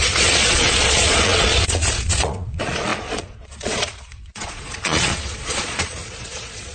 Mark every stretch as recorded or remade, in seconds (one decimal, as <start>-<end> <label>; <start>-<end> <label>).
0.0-6.7 remade